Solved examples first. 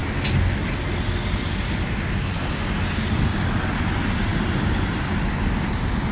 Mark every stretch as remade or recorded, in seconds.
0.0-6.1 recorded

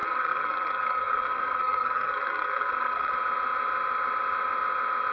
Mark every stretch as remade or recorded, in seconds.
0.0-3.1 remade; 3.1-5.1 recorded

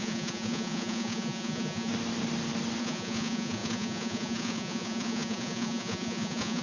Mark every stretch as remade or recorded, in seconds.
0.0-1.9 remade; 1.9-2.8 recorded; 2.8-6.6 remade

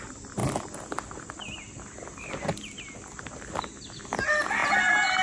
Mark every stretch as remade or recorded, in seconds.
0.0-5.2 recorded

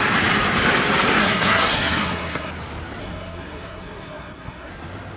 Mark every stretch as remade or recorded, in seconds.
0.0-1.2 recorded; 1.2-2.5 remade; 2.5-3.0 recorded; 3.0-4.7 remade; 4.7-5.2 recorded

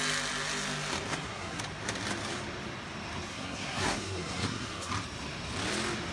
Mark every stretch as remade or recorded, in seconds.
0.0-1.1 recorded; 1.1-1.6 remade; 1.6-3.3 recorded; 3.3-4.9 remade; 4.9-6.1 recorded

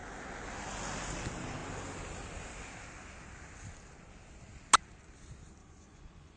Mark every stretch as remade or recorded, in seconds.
0.0-5.6 recorded; 5.6-6.4 remade